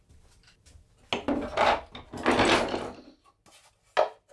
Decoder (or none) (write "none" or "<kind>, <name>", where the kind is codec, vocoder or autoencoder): none